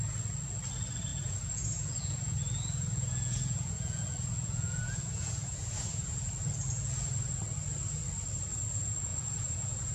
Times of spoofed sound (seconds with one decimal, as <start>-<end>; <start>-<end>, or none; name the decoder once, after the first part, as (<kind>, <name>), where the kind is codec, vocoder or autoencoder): 1.1-6.3 (vocoder, Vocos); 9.1-9.9